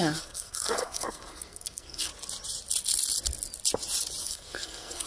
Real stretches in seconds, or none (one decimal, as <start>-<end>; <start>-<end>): 2.1-4.2